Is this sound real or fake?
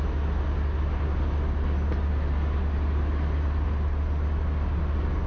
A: real